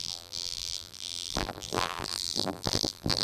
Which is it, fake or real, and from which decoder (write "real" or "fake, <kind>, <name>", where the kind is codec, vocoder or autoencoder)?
fake, vocoder, BigVGAN v2